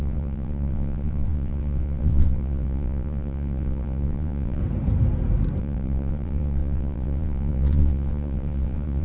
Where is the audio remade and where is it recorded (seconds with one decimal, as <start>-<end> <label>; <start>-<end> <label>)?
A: 0.0-4.6 remade; 4.6-5.6 recorded; 5.6-9.0 remade